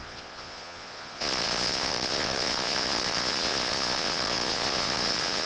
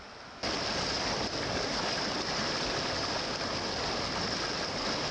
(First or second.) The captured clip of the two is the second